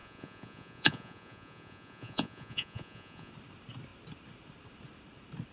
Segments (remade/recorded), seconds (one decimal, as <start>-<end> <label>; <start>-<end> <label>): 0.0-3.3 remade; 3.3-5.5 recorded